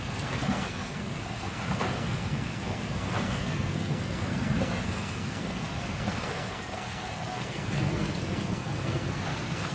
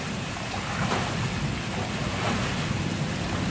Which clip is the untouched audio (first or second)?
second